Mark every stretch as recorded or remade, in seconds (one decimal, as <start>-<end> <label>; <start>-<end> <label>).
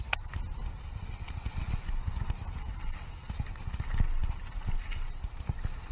0.0-5.9 recorded